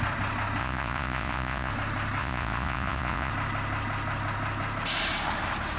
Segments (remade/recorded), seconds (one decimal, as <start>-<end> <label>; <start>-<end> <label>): 0.0-0.6 recorded; 0.6-1.7 remade; 1.7-2.2 recorded; 2.2-3.3 remade; 3.3-5.8 recorded